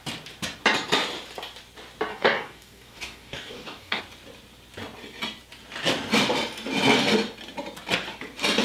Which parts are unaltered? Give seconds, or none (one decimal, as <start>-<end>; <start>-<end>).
0.0-2.1; 4.0-8.6